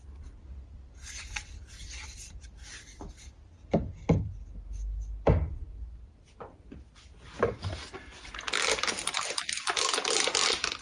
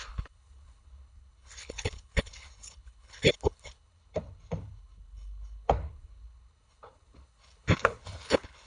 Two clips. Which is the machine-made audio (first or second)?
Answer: second